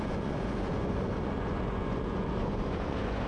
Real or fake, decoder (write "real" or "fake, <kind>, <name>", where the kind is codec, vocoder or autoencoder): fake, vocoder, Vocos